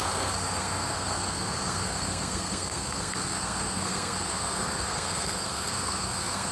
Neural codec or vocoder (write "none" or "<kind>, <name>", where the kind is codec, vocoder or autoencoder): codec, SNAC